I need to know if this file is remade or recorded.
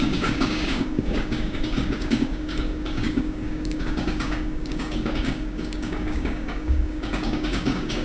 remade